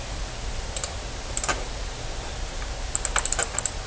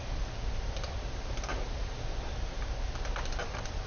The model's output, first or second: second